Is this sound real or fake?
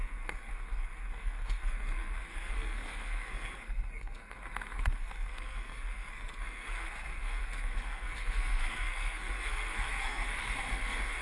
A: fake